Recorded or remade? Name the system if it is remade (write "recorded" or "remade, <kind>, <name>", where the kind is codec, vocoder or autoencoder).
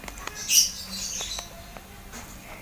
recorded